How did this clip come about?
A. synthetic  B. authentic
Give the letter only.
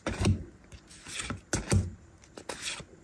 B